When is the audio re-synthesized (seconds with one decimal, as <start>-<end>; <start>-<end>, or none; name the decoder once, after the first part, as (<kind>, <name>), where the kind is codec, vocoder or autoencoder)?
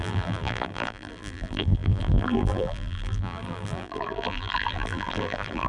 0.0-5.7 (vocoder, BigVGAN v2)